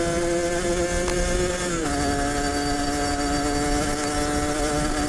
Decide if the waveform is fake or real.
real